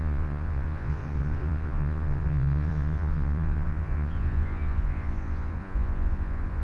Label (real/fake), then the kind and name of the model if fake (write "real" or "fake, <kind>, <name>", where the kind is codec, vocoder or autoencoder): fake, vocoder, Vocos